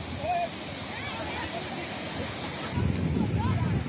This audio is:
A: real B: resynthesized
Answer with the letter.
A